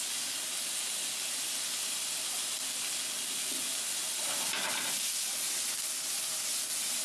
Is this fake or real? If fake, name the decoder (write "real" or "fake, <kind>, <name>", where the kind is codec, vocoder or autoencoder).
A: real